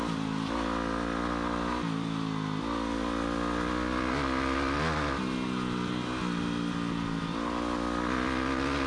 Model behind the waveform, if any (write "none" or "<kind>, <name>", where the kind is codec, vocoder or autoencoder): none